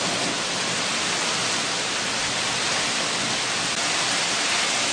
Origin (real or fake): real